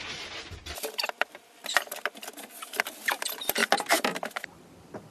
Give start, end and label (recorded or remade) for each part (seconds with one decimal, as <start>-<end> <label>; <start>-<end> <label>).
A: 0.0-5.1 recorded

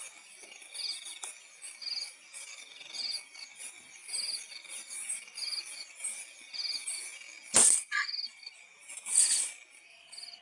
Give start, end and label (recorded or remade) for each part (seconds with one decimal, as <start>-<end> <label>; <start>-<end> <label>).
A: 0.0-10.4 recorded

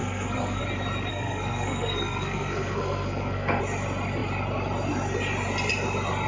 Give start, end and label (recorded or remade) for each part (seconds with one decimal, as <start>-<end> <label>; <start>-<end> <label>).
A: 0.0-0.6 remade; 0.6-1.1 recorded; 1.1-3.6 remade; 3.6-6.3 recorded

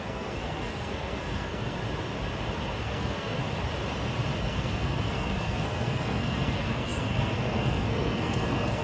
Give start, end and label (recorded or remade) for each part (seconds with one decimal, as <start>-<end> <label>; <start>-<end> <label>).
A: 0.0-1.8 remade; 1.8-2.8 recorded; 2.8-3.4 remade; 3.4-4.4 recorded; 4.4-8.8 remade

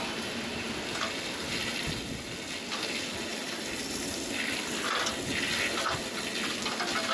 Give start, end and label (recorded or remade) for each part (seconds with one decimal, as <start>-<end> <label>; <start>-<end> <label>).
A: 0.0-3.3 recorded; 3.3-4.1 remade; 4.1-7.1 recorded